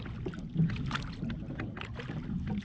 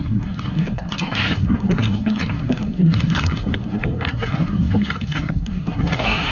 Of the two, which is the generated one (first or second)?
second